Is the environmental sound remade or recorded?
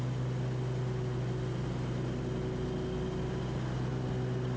recorded